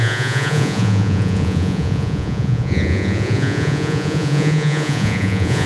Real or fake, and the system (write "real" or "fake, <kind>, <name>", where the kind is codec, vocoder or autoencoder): fake, vocoder, Vocos